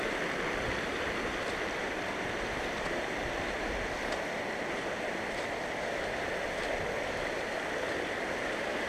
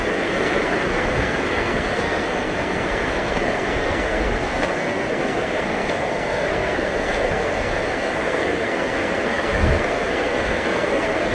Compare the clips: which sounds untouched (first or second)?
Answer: first